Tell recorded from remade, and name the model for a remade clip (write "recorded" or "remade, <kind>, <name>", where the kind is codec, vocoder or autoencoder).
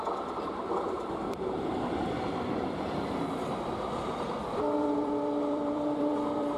remade, vocoder, BigVGAN v2